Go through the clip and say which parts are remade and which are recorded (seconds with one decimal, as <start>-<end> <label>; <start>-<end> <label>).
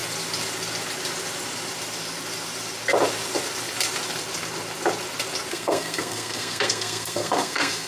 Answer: 0.0-5.5 recorded; 5.5-7.9 remade